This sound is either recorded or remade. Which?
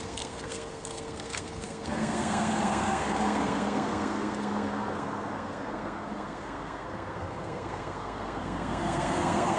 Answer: remade